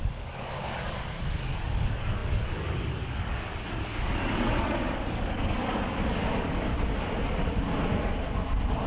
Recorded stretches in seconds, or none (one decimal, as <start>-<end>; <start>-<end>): 6.7-8.9